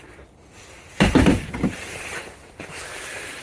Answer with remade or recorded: remade